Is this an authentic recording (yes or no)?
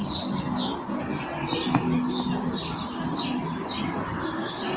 yes